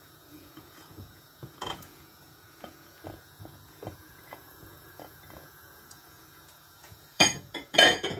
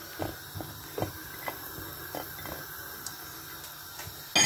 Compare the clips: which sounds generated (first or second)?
first